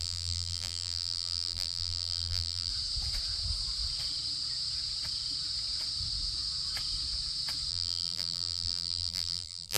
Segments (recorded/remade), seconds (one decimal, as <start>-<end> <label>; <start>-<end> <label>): 0.0-2.7 remade; 2.7-7.7 recorded; 7.7-9.8 remade